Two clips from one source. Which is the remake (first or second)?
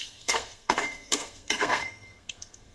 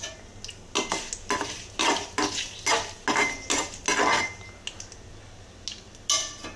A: first